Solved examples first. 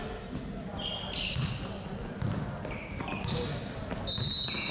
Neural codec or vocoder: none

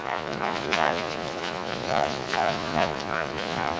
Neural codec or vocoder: vocoder, Vocos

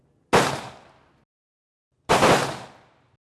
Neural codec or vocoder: none